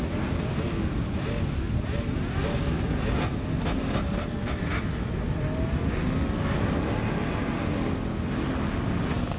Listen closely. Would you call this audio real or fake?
real